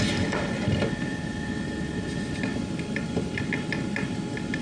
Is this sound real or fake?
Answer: real